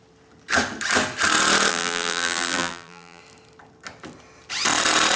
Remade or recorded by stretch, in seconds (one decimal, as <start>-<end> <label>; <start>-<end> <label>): 0.0-1.7 recorded; 1.7-3.2 remade; 3.2-5.2 recorded